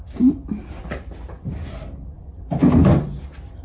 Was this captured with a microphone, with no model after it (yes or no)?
yes